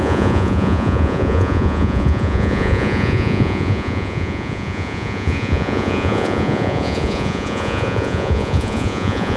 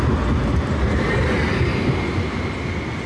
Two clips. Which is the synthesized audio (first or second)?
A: first